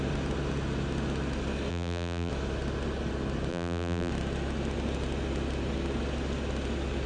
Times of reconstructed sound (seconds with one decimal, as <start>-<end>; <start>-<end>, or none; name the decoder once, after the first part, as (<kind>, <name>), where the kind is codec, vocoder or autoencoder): 1.7-2.3 (vocoder, BigVGAN v2); 3.5-4.1

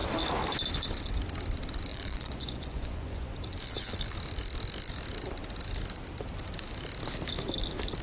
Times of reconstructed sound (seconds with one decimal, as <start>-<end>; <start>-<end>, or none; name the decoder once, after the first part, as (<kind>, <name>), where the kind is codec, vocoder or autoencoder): 1.9-3.3 (vocoder, Vocos)

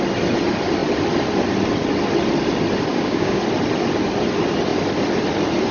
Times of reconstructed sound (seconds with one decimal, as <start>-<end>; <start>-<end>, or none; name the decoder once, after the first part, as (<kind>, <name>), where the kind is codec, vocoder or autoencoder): 2.9-3.4 (codec, DAC)

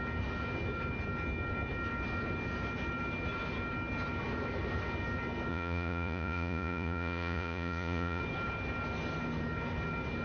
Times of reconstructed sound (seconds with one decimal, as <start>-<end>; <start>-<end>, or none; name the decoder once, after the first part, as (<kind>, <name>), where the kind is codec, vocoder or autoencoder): 5.5-8.2 (vocoder, Vocos)

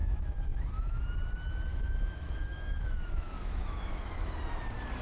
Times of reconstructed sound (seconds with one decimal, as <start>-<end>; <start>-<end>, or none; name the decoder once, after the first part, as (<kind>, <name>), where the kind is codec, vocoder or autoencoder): 0.0-1.0 (autoencoder, DAC-VAE); 1.7-4.3

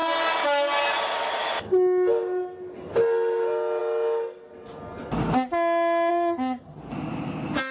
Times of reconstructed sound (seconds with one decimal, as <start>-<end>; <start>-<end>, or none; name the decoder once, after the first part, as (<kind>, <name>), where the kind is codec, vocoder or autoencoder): 6.1-6.8 (vocoder, HiFi-GAN)

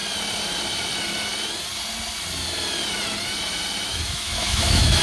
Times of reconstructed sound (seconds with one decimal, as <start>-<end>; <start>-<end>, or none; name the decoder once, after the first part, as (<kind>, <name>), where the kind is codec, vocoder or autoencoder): 3.9-5.0 (autoencoder, DAC-VAE)

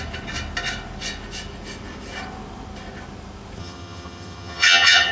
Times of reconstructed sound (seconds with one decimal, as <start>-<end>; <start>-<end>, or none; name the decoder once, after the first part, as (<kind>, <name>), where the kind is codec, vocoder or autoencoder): 3.6-5.1 (vocoder, HiFi-GAN)